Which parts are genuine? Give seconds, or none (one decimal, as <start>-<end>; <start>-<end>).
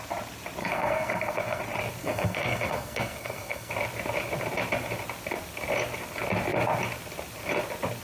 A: 0.0-0.6; 1.6-2.0; 3.7-8.0